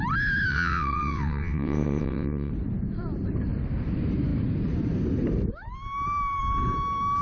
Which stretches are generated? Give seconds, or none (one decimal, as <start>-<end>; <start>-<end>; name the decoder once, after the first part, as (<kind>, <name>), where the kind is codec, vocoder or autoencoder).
0.5-2.5 (vocoder, WaveNeXt)